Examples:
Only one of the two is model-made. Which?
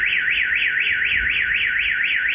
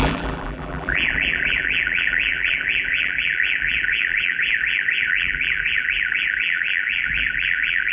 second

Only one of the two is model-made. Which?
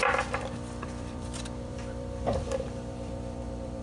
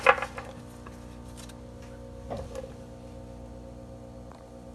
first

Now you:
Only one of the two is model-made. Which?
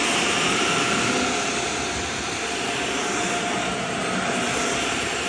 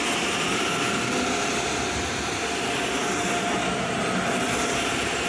first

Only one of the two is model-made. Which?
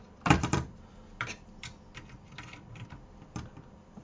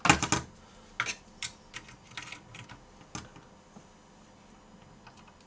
first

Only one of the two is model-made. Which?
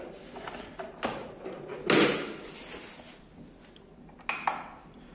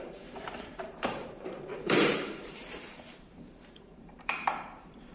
second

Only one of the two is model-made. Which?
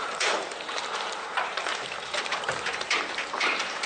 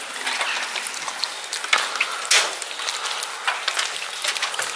first